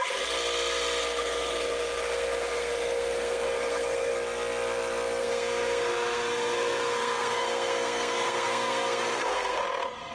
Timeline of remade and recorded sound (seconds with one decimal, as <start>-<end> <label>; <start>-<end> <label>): 0.0-1.0 recorded; 1.0-4.1 remade; 4.1-5.2 recorded; 5.2-9.6 remade; 9.6-10.1 recorded